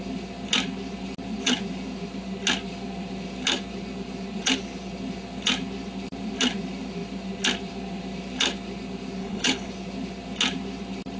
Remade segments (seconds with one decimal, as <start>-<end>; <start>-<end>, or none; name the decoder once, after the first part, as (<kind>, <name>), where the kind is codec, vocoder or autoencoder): 9.2-9.7 (codec, HILCodec)

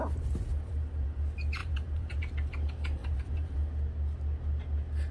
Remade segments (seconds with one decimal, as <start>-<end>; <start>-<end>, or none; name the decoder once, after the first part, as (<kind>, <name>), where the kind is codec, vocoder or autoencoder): 0.5-1.2 (vocoder, BigVGAN v2); 1.6-2.2; 3.0-3.7

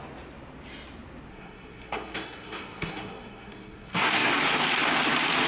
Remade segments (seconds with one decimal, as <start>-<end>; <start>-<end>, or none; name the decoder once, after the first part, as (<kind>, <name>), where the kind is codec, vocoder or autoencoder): 1.3-4.3 (codec, SNAC)